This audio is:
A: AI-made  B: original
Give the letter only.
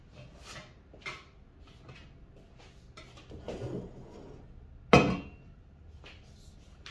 B